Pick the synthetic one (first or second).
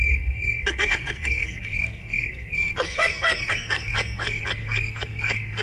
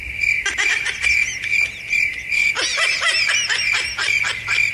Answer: first